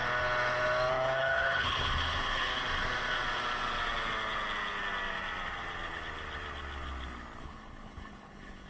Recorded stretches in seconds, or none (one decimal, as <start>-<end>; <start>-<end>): 0.0-0.9; 2.5-7.4